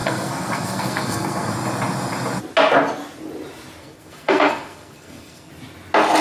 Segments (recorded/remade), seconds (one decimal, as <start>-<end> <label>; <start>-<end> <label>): 0.0-1.5 remade; 1.5-3.8 recorded; 3.8-5.5 remade; 5.5-6.2 recorded